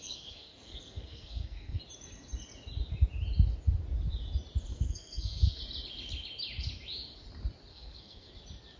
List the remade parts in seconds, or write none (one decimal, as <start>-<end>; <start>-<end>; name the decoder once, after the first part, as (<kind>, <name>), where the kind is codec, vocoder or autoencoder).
0.0-1.8 (codec, SNAC); 4.7-5.6; 7.7-8.3